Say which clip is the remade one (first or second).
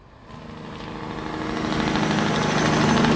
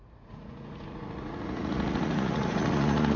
second